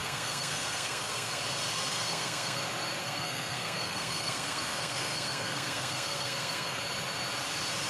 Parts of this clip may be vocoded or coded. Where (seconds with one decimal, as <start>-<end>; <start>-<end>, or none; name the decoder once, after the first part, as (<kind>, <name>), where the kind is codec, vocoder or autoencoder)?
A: 0.0-1.4 (codec, SNAC); 1.9-2.6; 3.0-6.8